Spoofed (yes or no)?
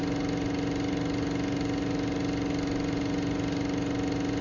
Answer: no